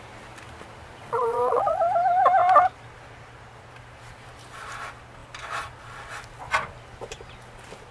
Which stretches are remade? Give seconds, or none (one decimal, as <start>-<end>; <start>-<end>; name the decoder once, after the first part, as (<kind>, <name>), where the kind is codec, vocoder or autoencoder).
1.0-1.8 (vocoder, Vocos)